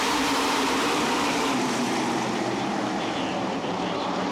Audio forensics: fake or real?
fake